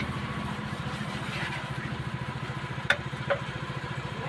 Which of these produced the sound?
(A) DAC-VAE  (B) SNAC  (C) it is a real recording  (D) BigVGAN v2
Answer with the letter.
D